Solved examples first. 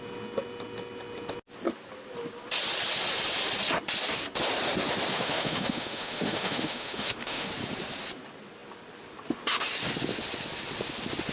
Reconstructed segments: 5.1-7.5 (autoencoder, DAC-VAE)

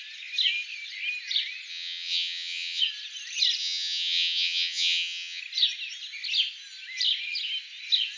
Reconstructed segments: 1.7-2.8 (vocoder, WaveNeXt); 3.6-5.4